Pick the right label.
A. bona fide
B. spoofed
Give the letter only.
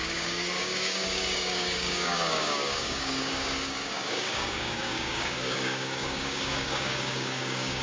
B